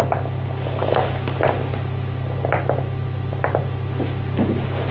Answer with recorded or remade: recorded